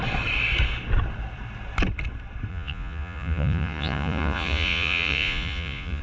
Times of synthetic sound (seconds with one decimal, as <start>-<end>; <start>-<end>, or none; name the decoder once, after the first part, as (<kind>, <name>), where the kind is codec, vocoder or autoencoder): 2.5-6.0 (vocoder, Vocos)